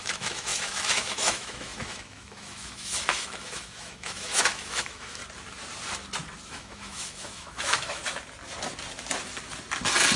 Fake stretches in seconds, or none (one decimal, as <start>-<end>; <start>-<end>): 0.0-5.2; 6.5-8.0